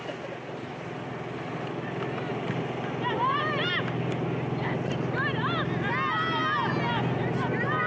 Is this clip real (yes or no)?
yes